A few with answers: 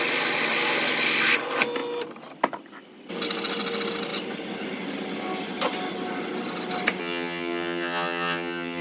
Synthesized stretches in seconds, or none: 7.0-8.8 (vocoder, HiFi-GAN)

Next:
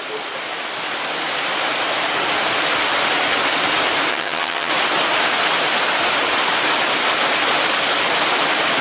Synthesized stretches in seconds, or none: 4.1-4.7 (vocoder, HiFi-GAN)

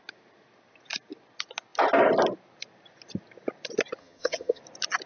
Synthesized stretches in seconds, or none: 4.0-4.6 (vocoder, HiFi-GAN)

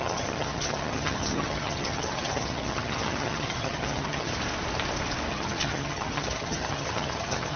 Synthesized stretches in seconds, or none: 0.0-4.3 (vocoder, HiFi-GAN); 5.3-7.6

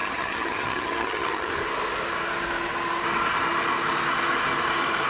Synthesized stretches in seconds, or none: 0.0-1.5 (vocoder, HiFi-GAN)